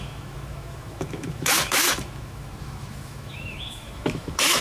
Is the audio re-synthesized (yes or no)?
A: yes